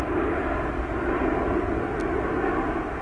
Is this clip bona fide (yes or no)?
yes